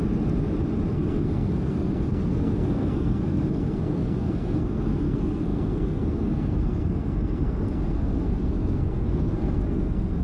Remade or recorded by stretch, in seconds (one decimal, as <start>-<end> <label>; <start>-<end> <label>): 0.0-0.9 recorded; 0.9-10.2 remade